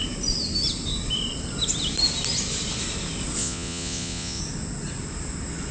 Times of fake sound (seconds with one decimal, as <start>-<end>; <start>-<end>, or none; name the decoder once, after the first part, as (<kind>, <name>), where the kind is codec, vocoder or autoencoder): 3.4-4.4 (vocoder, Vocos)